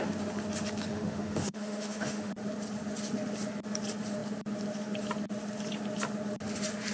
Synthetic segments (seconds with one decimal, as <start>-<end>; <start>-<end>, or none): 0.9-2.3